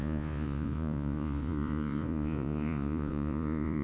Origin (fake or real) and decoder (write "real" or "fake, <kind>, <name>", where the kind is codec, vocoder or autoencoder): fake, vocoder, Vocos